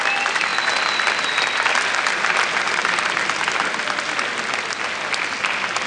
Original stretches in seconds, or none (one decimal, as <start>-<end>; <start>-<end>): 0.0-5.9